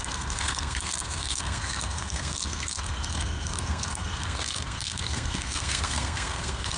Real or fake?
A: fake